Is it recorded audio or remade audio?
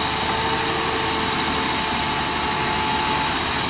recorded